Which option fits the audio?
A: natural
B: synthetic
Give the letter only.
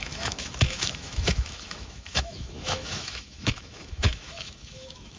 B